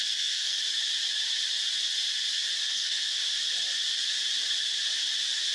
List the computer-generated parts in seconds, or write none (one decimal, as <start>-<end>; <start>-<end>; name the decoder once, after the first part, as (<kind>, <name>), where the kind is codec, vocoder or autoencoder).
0.0-0.6 (codec, SNAC); 2.7-3.2